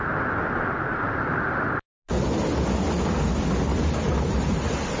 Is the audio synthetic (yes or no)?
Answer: no